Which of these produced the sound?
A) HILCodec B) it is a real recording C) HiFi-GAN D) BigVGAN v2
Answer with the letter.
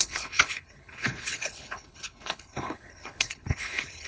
A